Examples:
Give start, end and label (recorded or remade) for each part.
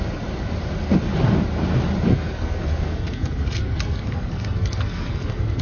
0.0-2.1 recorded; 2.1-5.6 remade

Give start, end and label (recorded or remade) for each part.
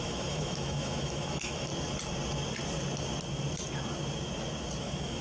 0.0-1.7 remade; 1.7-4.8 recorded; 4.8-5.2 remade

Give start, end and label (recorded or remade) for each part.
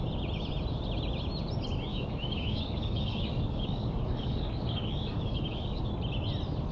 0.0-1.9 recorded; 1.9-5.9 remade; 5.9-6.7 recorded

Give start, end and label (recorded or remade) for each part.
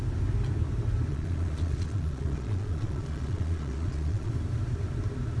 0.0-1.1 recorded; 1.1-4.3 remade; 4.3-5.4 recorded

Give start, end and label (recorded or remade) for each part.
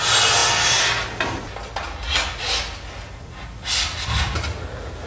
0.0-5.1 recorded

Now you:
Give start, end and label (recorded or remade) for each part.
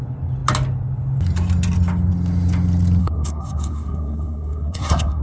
0.0-3.0 recorded; 3.0-5.2 remade